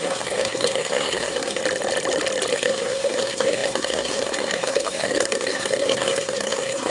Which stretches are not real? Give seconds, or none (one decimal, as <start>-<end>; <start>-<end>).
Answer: 0.0-1.6; 2.5-6.9